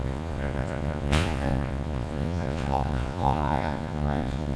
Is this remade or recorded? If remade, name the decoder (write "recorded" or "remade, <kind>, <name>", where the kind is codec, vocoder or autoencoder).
remade, vocoder, Vocos